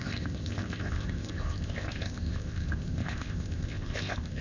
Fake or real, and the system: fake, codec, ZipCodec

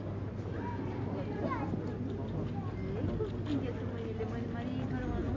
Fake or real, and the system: real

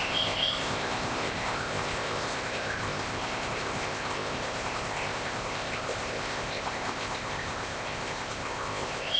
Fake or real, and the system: fake, codec, ZipCodec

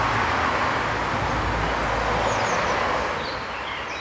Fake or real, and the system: real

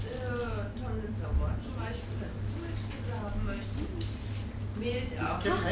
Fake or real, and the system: real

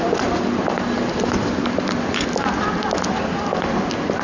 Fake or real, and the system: real